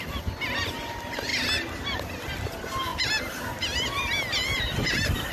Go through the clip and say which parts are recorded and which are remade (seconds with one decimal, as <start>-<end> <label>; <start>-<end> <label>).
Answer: 0.0-5.3 recorded